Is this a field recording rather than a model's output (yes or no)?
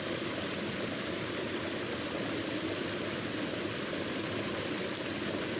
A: no